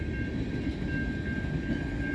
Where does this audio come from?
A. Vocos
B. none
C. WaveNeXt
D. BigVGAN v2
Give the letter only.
B